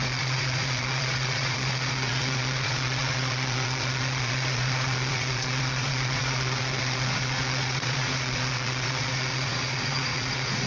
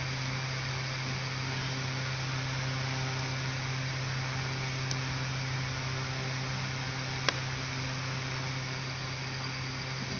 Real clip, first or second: second